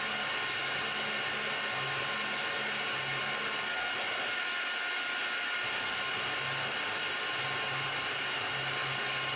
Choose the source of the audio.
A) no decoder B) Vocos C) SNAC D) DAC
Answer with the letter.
A